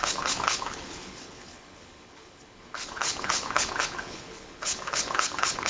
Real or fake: fake